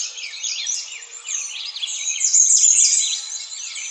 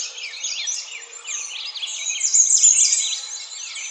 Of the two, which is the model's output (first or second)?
first